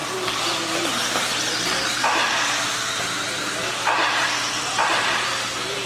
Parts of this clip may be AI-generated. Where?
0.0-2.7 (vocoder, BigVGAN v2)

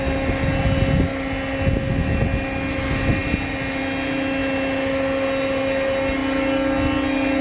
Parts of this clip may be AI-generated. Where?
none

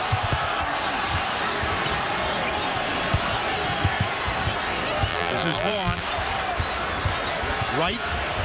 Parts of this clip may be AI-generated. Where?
5.1-6.0 (vocoder, BigVGAN v2)